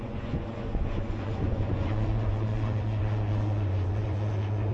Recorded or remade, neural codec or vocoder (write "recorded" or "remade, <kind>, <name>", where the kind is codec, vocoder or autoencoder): remade, vocoder, Vocos